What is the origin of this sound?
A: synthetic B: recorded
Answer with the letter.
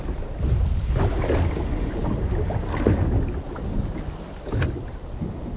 B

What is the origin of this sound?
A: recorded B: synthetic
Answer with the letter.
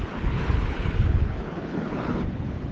B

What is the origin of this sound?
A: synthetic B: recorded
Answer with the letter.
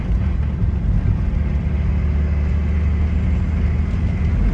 B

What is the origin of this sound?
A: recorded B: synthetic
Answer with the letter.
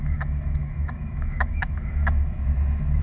B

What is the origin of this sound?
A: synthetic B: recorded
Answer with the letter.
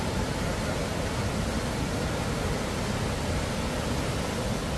B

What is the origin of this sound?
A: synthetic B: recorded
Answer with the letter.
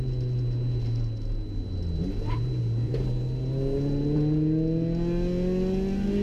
B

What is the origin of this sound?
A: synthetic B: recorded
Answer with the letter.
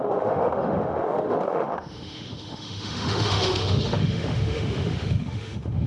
A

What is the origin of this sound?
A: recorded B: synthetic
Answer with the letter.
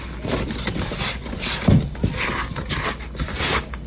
A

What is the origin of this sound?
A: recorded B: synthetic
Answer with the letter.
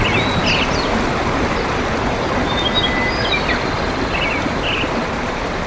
A